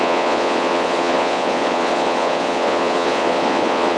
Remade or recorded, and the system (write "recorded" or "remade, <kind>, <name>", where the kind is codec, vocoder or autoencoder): remade, vocoder, Vocos